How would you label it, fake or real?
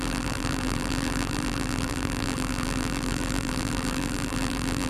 fake